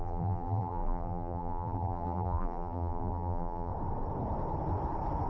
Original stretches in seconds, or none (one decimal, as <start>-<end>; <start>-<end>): 3.7-5.3